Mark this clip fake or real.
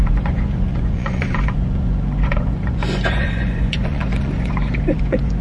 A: fake